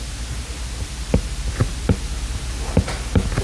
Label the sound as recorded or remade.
recorded